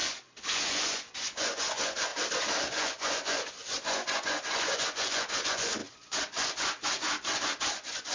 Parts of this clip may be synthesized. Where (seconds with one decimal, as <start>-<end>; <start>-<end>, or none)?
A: 0.0-2.1; 2.6-8.1